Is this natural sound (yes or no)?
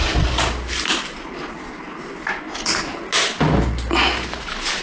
yes